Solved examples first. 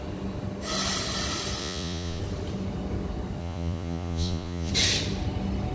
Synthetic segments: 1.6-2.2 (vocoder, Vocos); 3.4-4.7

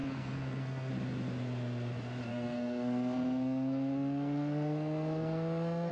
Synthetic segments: 0.0-0.9 (codec, SNAC); 2.3-5.9

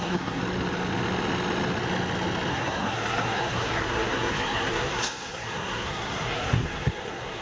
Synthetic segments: 0.0-0.4 (codec, SNAC); 2.5-7.4

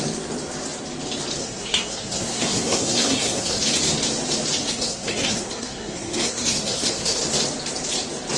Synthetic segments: 1.4-3.6 (codec, SNAC); 4.6-7.2

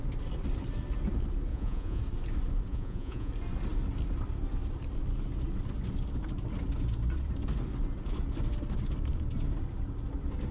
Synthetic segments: 1.5-2.0 (vocoder, Vocos); 2.7-3.3